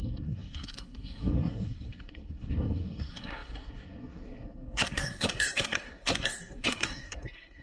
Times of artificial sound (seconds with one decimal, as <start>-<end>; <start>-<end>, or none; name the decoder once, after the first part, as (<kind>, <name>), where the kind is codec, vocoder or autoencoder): 0.0-7.6 (codec, SNAC)